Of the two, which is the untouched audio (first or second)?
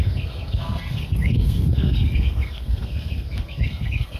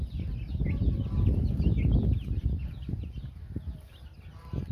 second